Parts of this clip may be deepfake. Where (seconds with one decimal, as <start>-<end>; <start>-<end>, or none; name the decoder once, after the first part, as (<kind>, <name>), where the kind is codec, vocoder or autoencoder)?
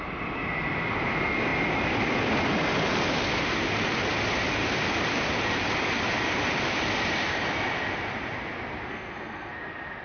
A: 8.9-9.5 (codec, SNAC)